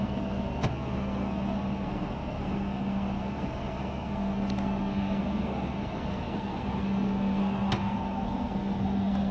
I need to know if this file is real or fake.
fake